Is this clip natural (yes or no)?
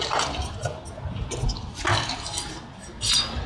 yes